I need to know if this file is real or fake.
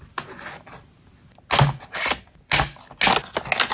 real